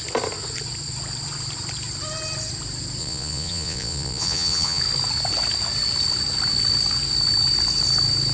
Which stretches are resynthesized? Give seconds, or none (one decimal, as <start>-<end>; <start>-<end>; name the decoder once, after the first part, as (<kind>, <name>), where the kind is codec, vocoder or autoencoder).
3.0-4.8 (vocoder, Vocos)